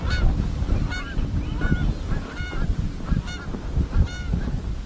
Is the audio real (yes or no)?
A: yes